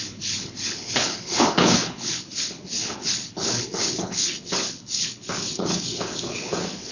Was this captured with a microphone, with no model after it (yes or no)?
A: no